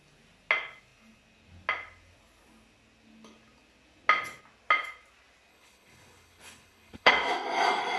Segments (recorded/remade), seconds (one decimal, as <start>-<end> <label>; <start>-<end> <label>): 0.0-5.5 recorded; 5.5-7.1 remade; 7.1-8.0 recorded